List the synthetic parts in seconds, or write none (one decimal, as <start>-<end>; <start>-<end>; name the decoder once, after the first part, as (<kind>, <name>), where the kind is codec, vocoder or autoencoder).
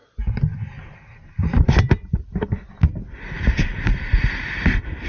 1.5-5.1 (vocoder, BigVGAN v2)